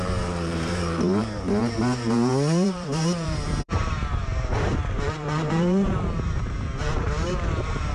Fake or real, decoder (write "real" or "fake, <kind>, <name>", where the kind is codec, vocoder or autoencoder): fake, vocoder, BigVGAN v2